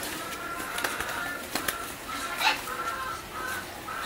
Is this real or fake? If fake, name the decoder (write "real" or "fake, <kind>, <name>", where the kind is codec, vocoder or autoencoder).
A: real